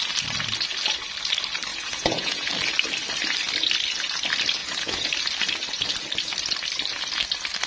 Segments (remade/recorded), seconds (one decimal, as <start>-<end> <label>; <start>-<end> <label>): 0.0-1.7 recorded; 1.7-2.5 remade; 2.5-4.6 recorded; 4.6-5.1 remade; 5.1-7.7 recorded